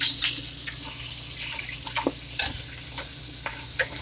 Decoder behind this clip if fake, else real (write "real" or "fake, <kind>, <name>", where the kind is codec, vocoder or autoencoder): real